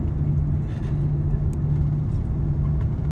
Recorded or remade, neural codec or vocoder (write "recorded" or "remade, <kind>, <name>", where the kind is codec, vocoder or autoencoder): recorded